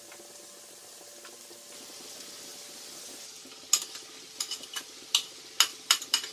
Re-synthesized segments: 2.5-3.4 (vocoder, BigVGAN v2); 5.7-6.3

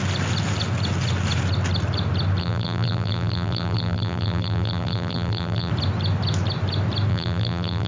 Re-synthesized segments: 2.4-5.7 (vocoder, BigVGAN v2); 7.1-7.9

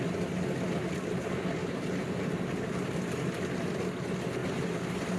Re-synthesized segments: 1.6-3.4 (vocoder, BigVGAN v2); 4.4-5.2

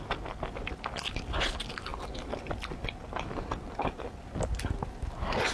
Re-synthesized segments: none

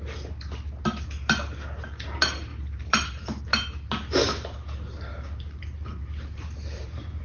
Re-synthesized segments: 2.5-3.4 (vocoder, BigVGAN v2); 5.1-7.2

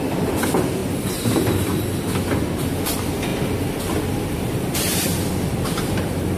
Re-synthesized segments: 0.0-0.8 (vocoder, BigVGAN v2); 2.8-6.4